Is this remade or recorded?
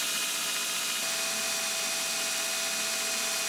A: recorded